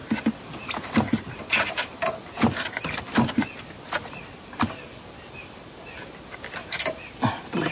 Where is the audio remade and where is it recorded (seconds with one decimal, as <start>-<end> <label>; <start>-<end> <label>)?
0.0-7.7 recorded